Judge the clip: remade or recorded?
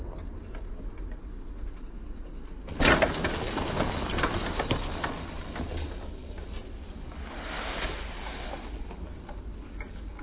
recorded